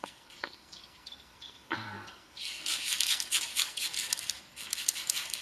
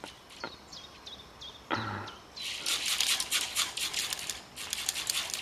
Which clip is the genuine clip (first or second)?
second